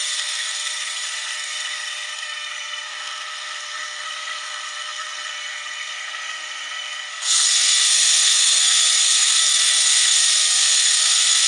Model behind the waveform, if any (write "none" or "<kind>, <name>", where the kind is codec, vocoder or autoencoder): codec, SNAC